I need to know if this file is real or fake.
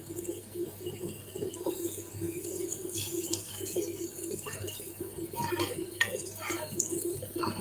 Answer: fake